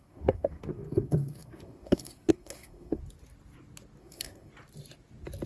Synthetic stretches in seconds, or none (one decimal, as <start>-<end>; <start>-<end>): 0.0-3.0; 4.0-4.5